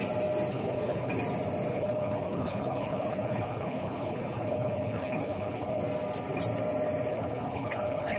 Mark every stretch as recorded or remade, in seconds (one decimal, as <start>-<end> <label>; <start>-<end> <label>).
0.0-0.5 recorded; 0.5-1.1 remade; 1.1-1.7 recorded; 1.7-5.8 remade; 5.8-7.1 recorded; 7.1-8.2 remade